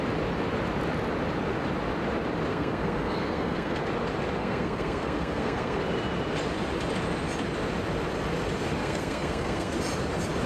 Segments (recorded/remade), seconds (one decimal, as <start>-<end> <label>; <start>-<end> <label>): 0.0-2.5 recorded; 2.5-3.8 remade; 3.8-4.4 recorded; 4.4-5.8 remade; 5.8-8.8 recorded; 8.8-9.7 remade; 9.7-10.5 recorded